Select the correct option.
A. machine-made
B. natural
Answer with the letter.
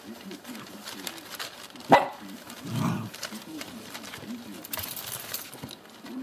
A